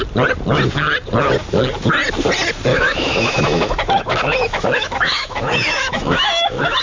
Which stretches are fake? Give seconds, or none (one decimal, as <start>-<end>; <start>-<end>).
2.7-6.8